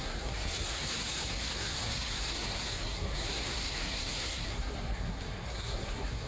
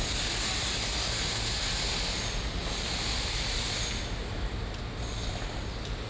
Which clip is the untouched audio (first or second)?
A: second